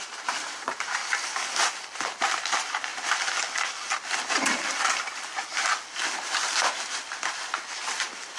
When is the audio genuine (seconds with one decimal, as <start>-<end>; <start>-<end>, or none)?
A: 1.0-1.7; 2.9-4.3; 5.7-8.0